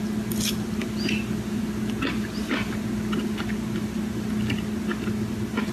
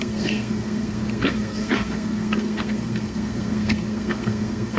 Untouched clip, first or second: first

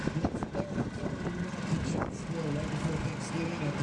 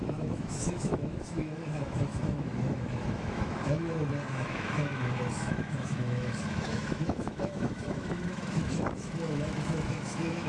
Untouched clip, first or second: first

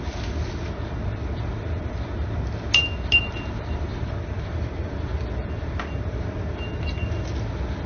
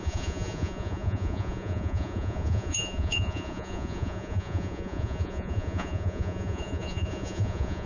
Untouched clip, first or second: first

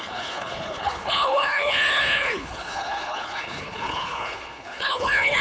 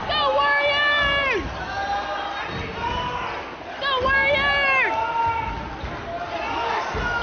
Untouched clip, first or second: second